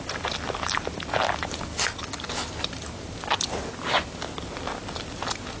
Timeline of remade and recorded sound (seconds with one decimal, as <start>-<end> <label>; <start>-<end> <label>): 0.0-5.6 recorded